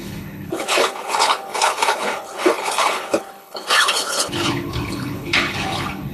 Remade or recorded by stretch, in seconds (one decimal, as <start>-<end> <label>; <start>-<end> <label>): 0.0-6.1 remade